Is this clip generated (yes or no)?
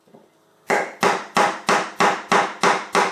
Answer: no